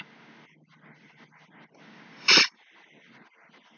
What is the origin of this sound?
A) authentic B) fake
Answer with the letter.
A